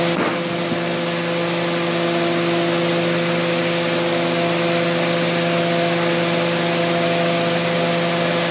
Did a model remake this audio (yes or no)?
no